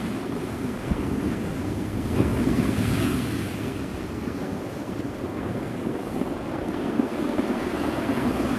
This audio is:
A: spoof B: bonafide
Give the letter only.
A